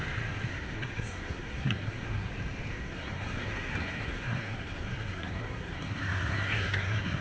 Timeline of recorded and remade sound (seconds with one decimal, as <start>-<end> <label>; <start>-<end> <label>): 0.0-0.5 recorded; 0.5-2.3 remade; 2.3-2.7 recorded; 2.7-7.2 remade